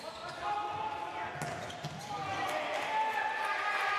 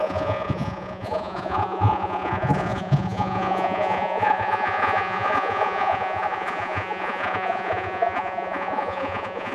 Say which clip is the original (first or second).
first